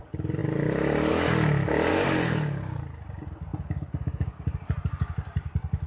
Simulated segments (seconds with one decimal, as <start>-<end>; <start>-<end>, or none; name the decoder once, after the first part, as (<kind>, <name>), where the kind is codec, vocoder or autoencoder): 1.9-2.8 (codec, DAC); 3.5-4.4